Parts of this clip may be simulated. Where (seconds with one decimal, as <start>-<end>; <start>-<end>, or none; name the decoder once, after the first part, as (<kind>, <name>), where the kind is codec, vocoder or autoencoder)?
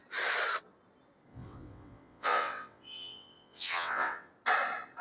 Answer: 1.3-4.3 (vocoder, WaveNeXt)